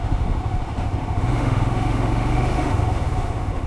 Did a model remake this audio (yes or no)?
yes